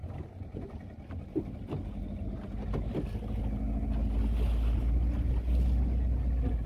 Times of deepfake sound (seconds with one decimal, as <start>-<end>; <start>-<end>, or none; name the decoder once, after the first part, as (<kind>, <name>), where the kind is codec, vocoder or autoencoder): none